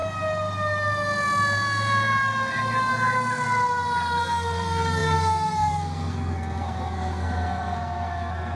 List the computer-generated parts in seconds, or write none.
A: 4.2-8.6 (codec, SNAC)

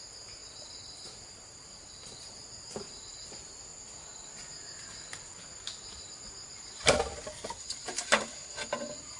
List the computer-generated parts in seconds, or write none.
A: 0.0-3.7 (vocoder, BigVGAN v2); 6.3-9.2

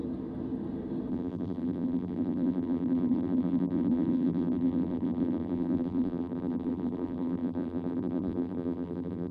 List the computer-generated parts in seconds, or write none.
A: 1.1-9.3 (vocoder, BigVGAN v2)